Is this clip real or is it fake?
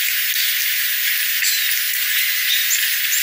real